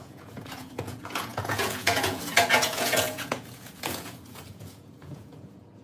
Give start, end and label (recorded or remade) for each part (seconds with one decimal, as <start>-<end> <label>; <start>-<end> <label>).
0.0-5.8 remade